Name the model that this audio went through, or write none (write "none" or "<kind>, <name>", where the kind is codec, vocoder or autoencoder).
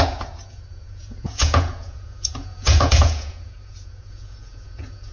vocoder, Vocos